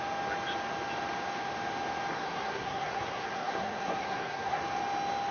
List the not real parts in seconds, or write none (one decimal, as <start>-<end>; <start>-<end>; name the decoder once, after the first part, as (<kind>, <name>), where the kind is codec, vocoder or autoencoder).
2.1-4.6 (codec, SNAC)